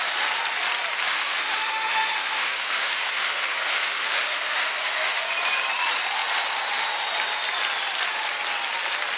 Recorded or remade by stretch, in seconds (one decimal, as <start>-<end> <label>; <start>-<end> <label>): 0.0-1.1 recorded; 1.1-5.2 remade; 5.2-9.2 recorded